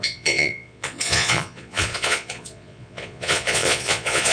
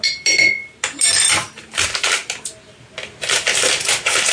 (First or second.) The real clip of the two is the second